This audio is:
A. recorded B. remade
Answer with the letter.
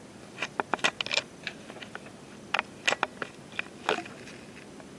A